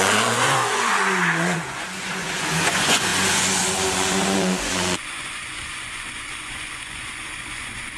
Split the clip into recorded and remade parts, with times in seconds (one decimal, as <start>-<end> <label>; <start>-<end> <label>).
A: 0.0-8.0 remade